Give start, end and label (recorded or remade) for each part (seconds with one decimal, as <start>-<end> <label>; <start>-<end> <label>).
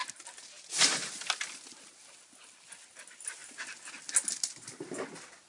0.0-5.5 recorded